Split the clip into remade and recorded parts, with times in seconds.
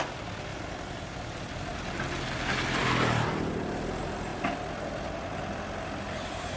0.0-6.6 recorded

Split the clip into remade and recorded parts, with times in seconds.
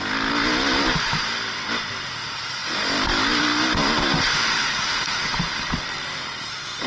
0.0-4.6 recorded; 4.6-5.5 remade; 5.5-6.9 recorded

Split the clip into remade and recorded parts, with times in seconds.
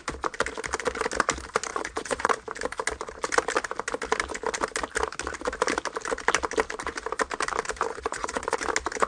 0.0-1.7 recorded; 1.7-2.3 remade; 2.3-7.9 recorded; 7.9-8.6 remade; 8.6-9.1 recorded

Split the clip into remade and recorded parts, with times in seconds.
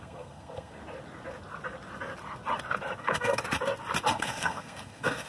0.0-0.8 remade; 0.8-3.0 recorded; 3.0-3.4 remade; 3.4-4.1 recorded; 4.1-5.3 remade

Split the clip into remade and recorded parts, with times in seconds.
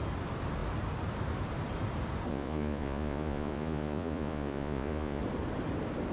0.0-2.3 recorded; 2.3-5.2 remade; 5.2-6.1 recorded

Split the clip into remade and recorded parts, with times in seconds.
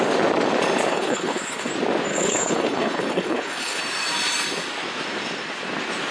0.0-0.9 recorded; 0.9-1.7 remade; 1.7-2.1 recorded; 2.1-3.8 remade; 3.8-6.1 recorded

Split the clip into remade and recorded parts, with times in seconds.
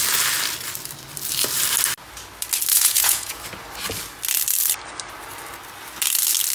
0.0-2.7 recorded; 2.7-3.4 remade; 3.4-6.5 recorded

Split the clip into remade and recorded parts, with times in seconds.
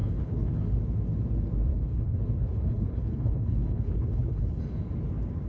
0.0-0.6 remade; 0.6-1.7 recorded; 1.7-4.6 remade; 4.6-5.5 recorded